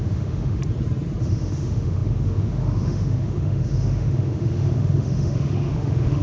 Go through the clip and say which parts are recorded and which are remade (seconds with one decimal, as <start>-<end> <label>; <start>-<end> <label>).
0.0-0.6 remade; 0.6-1.2 recorded; 1.2-6.2 remade